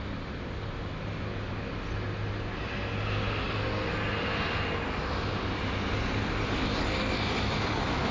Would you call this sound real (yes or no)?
yes